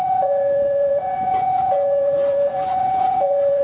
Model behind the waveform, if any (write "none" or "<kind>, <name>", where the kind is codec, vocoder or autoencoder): vocoder, Vocos